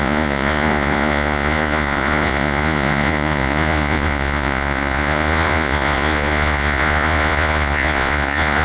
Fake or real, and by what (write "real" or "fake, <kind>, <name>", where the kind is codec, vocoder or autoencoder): fake, vocoder, Vocos